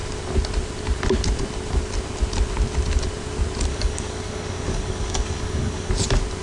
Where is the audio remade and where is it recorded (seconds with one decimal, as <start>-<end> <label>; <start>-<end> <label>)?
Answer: 0.0-3.7 recorded; 3.7-5.9 remade; 5.9-6.4 recorded